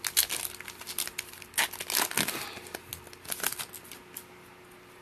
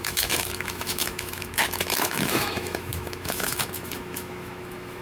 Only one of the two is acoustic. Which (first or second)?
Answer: first